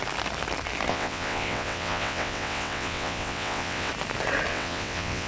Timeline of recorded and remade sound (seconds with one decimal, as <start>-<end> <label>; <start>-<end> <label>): 0.0-0.9 recorded; 0.9-3.9 remade; 3.9-4.5 recorded; 4.5-5.3 remade